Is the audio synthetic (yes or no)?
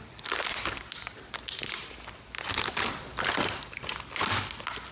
no